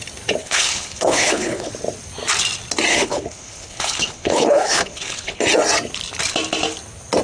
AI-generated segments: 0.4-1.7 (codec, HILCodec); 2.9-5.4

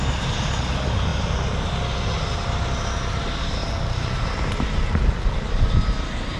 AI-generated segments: none

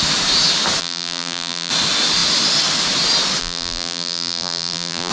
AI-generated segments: 0.8-1.7 (vocoder, BigVGAN v2); 3.4-5.1

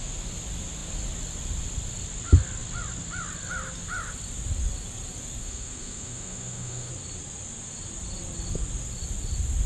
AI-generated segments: 5.4-6.9 (autoencoder, DAC-VAE)

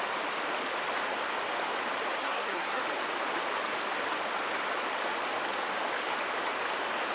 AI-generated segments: 2.2-2.8 (codec, SNAC)

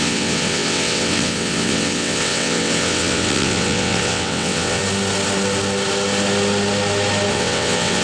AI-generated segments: 0.0-4.8 (vocoder, WaveNeXt); 7.3-8.0

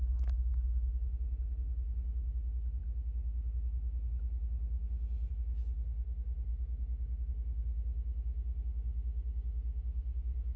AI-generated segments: none

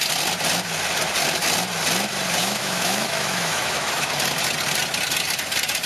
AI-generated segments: 2.4-4.1 (autoencoder, DAC-VAE)